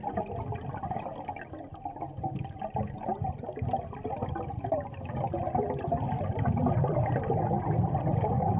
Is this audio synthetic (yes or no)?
no